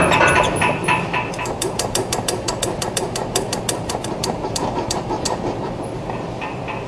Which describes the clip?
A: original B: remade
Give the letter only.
B